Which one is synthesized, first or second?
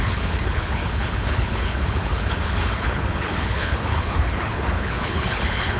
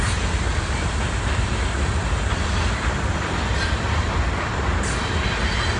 first